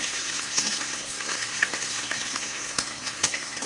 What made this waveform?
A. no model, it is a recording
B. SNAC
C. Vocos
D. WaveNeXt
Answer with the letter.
B